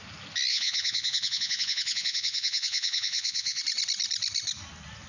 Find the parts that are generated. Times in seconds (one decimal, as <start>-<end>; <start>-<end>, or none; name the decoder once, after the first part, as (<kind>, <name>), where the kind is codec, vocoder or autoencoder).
0.5-3.6 (vocoder, Vocos)